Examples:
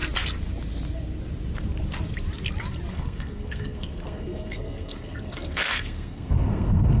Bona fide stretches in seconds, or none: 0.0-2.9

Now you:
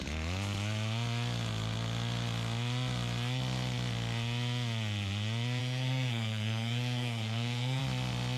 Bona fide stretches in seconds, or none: 0.0-5.6; 7.8-8.4

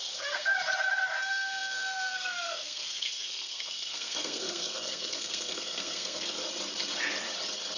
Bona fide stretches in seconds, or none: 0.5-1.2; 6.4-7.8

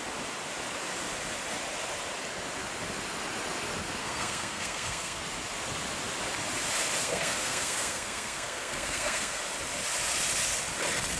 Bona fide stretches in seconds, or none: 0.0-4.0; 5.2-7.0; 9.4-11.2